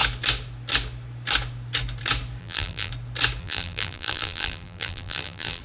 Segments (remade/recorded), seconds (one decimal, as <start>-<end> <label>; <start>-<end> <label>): 0.0-2.4 recorded; 2.4-2.9 remade; 2.9-3.4 recorded; 3.4-5.6 remade